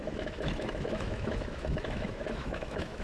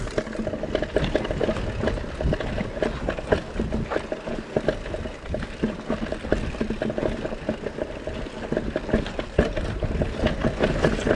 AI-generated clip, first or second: first